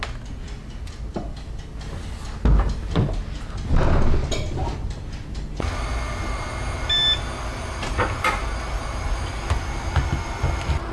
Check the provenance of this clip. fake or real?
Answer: real